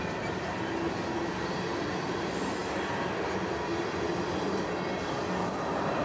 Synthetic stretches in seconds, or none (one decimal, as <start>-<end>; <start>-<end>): none